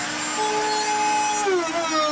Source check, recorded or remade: recorded